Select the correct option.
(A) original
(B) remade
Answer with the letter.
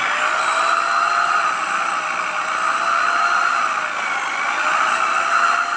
A